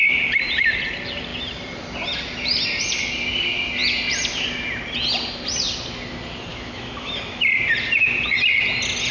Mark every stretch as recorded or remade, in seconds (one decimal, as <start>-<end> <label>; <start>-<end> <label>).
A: 0.0-6.5 recorded; 6.5-7.5 remade; 7.5-9.1 recorded

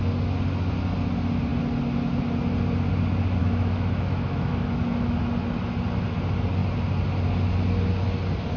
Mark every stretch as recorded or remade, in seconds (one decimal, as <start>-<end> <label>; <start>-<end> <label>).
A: 0.0-3.4 recorded; 3.4-5.2 remade; 5.2-8.6 recorded

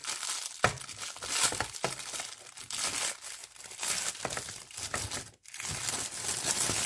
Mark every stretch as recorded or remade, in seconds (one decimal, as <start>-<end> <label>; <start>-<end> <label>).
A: 0.0-6.9 recorded

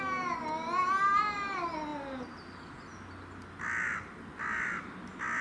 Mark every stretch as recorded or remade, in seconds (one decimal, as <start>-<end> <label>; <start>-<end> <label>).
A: 0.0-5.4 recorded

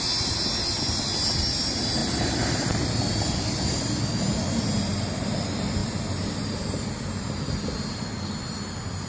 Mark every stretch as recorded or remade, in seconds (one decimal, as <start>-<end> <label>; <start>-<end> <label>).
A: 0.0-2.0 recorded; 2.0-4.0 remade; 4.0-5.8 recorded; 5.8-7.1 remade; 7.1-9.1 recorded

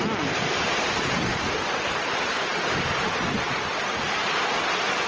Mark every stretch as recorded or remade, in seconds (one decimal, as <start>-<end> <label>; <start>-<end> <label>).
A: 0.0-5.1 recorded

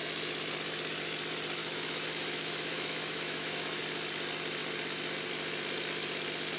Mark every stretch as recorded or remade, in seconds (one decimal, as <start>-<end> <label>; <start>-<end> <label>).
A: 0.0-1.6 recorded; 1.6-3.8 remade; 3.8-6.6 recorded